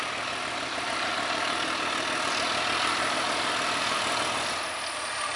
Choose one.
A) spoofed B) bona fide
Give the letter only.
B